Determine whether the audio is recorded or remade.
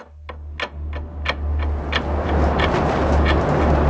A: recorded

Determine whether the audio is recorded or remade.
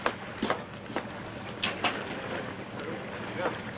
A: recorded